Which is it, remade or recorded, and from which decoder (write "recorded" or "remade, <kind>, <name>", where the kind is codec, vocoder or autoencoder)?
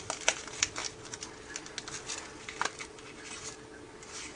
recorded